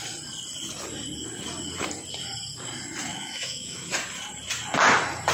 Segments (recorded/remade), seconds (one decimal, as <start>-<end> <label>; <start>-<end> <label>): 0.0-3.1 recorded; 3.1-3.9 remade; 3.9-5.3 recorded